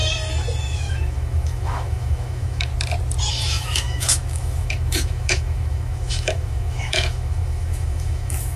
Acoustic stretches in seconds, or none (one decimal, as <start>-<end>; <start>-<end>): 0.0-0.6; 2.7-3.3